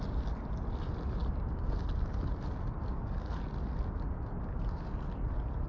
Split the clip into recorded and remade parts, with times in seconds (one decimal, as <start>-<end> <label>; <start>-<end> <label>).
0.0-5.7 recorded